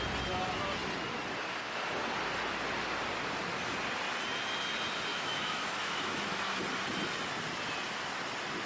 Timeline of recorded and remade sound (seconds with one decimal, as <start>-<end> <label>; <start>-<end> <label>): 0.0-5.1 recorded; 5.1-6.5 remade; 6.5-8.7 recorded